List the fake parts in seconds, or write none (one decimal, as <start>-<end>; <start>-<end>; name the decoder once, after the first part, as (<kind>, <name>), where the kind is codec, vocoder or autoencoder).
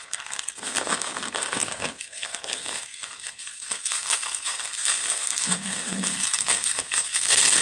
0.0-7.6 (codec, SNAC)